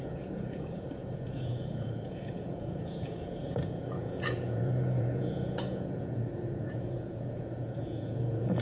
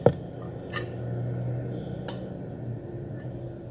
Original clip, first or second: second